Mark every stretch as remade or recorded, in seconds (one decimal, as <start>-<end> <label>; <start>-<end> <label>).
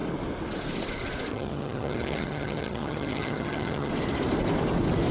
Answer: 0.0-1.3 recorded; 1.3-3.9 remade; 3.9-5.1 recorded